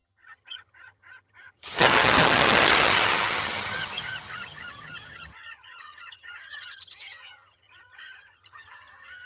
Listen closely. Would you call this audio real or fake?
fake